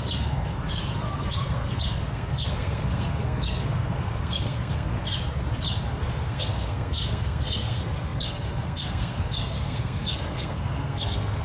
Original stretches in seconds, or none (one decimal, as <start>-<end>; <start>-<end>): 5.0-5.9